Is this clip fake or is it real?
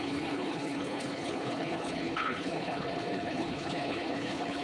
fake